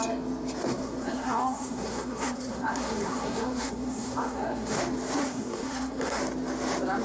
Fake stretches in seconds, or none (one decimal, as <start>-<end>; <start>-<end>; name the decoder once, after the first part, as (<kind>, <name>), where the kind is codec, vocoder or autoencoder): 0.6-4.8 (codec, SNAC); 5.2-6.2